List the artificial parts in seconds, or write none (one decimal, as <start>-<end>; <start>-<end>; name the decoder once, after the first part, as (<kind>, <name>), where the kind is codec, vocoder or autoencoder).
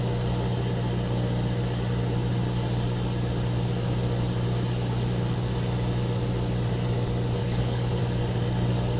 7.4-8.0 (codec, HILCodec)